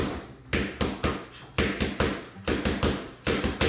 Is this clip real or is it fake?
real